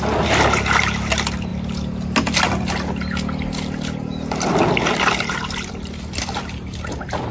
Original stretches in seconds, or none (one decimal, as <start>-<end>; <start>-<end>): 0.0-7.3